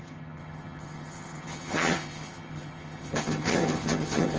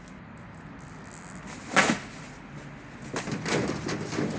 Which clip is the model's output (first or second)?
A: first